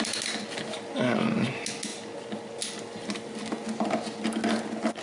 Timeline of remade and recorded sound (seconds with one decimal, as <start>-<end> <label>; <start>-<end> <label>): 0.0-5.0 recorded